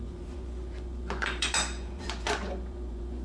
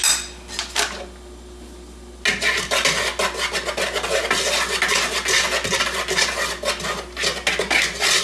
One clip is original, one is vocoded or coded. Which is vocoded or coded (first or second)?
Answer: first